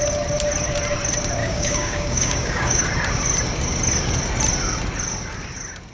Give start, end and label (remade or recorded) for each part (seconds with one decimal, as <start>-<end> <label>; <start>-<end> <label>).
0.0-1.4 recorded; 1.4-2.8 remade; 2.8-5.9 recorded